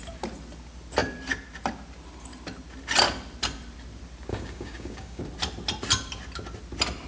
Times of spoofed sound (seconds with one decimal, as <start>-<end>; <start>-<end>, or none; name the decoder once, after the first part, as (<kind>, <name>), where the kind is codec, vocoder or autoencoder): 4.3-5.2 (codec, DAC)

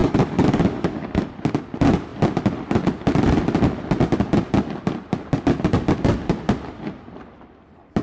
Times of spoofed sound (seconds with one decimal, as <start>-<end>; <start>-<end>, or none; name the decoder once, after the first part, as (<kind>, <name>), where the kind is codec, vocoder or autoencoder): 0.0-1.3 (codec, DAC)

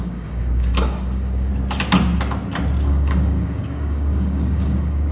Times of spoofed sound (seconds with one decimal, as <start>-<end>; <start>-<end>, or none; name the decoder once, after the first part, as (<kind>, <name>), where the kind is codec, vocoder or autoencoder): 0.0-1.5 (codec, DAC); 2.9-5.1

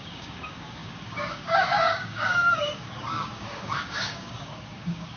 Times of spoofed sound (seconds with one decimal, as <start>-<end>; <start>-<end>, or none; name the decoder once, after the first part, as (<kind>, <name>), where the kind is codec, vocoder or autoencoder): 0.0-5.2 (codec, DAC)

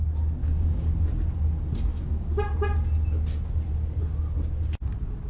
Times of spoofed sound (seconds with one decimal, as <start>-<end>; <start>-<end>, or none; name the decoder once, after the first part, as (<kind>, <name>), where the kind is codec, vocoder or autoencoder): 0.4-0.9 (codec, DAC)

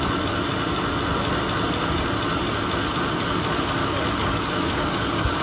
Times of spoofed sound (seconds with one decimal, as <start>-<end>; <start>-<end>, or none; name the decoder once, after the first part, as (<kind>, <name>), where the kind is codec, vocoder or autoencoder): 3.8-5.4 (codec, DAC)

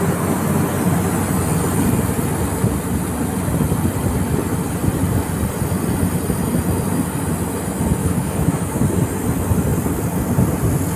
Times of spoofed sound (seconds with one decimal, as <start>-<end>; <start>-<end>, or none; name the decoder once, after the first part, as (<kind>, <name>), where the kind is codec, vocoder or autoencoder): 8.0-8.8 (codec, DAC)